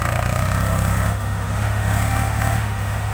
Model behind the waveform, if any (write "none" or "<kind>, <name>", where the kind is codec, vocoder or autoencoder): autoencoder, DAC-VAE